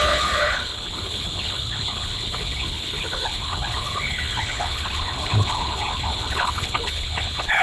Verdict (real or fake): fake